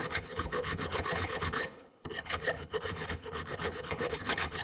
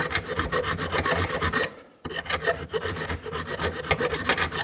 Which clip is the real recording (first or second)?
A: second